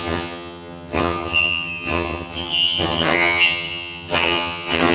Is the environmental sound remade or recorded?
remade